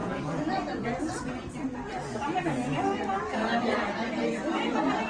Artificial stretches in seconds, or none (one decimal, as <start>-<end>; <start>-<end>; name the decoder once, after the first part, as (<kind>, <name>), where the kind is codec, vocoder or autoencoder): 0.0-5.1 (vocoder, BigVGAN v2)